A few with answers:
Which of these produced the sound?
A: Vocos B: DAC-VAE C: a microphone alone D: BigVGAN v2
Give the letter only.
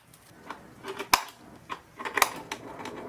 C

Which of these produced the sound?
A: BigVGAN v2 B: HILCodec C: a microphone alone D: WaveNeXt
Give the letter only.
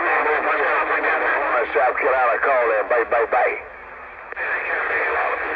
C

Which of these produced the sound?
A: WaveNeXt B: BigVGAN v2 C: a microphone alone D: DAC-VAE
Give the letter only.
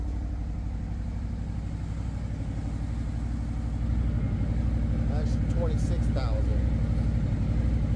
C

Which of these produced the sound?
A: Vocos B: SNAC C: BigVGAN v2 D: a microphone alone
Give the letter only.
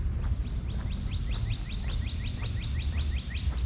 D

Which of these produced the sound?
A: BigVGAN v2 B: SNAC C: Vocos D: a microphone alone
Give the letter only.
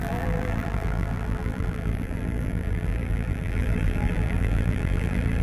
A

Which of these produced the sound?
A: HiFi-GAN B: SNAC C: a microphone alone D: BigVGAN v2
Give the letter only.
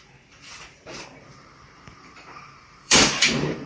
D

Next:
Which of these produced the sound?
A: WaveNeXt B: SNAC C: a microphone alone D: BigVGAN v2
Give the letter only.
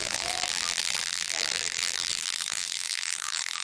D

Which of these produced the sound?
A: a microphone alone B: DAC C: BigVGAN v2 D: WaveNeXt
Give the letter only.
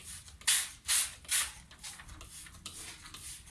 A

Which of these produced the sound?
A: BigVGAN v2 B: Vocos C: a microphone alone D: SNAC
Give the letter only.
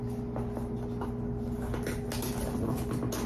C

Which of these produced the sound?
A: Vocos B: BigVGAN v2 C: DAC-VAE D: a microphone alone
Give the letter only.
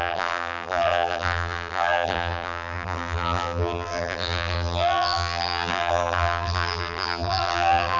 B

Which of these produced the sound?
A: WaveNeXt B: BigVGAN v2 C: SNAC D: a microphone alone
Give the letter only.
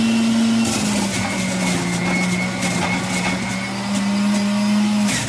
D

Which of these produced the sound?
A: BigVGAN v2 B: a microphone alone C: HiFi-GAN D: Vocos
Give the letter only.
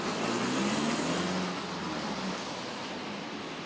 B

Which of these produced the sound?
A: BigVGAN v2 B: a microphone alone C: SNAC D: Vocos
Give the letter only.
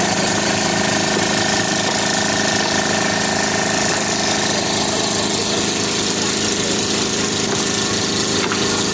B